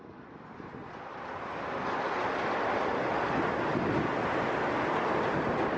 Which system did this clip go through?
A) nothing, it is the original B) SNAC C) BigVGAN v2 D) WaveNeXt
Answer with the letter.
A